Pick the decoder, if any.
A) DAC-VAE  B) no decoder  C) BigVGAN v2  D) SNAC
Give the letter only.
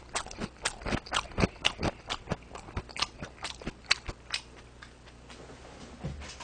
B